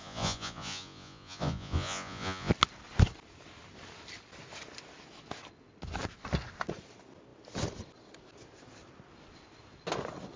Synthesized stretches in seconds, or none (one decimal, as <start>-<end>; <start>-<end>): 0.0-2.5

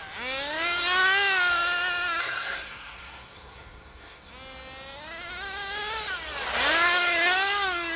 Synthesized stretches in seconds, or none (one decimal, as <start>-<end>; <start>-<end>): 2.2-4.3

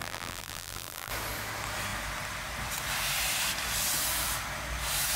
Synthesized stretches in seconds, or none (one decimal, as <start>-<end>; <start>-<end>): 0.0-1.1

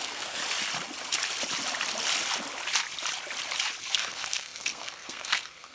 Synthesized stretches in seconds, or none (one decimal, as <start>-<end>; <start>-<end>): 0.0-0.4; 3.8-5.7

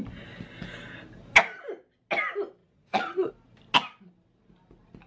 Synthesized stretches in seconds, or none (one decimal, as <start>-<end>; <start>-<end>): 2.6-3.3